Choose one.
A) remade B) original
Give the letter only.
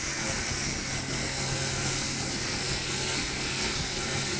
A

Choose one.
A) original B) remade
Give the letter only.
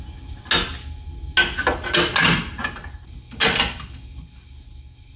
A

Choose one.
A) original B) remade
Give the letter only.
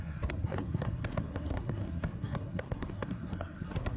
B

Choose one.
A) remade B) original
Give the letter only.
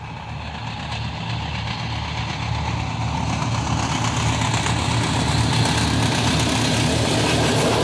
B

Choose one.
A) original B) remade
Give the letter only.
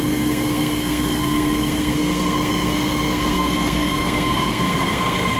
B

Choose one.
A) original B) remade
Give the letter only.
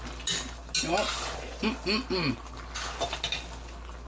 A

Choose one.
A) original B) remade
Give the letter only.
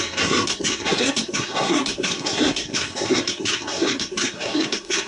B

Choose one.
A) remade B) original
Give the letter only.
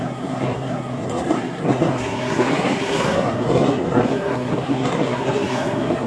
A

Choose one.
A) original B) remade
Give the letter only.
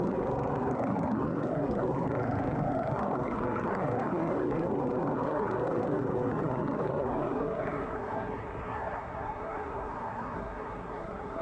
B